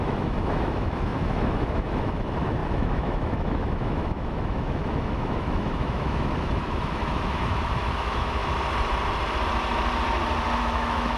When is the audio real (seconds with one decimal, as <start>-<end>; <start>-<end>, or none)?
8.4-10.6